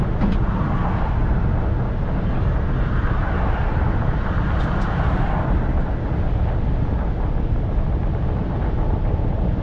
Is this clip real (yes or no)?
yes